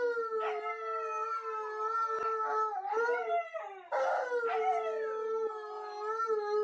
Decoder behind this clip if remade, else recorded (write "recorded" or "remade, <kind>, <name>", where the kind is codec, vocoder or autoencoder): recorded